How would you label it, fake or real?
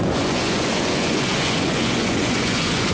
fake